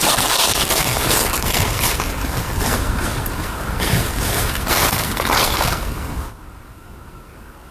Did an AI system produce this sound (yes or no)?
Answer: yes